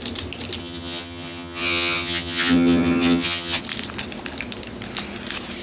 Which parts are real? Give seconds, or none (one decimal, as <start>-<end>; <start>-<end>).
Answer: 0.0-0.6; 3.6-5.6